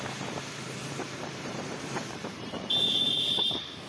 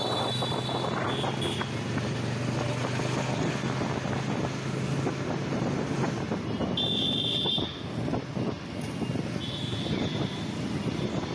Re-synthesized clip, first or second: first